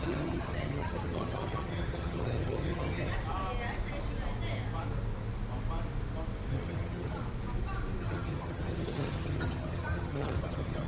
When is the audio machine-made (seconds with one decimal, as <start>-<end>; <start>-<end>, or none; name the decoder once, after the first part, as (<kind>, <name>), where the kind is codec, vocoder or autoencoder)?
0.0-3.1 (vocoder, HiFi-GAN); 6.5-7.2; 8.0-10.9